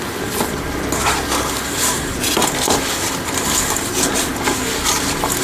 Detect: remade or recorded recorded